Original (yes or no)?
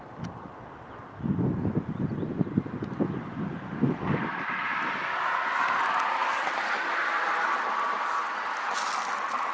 yes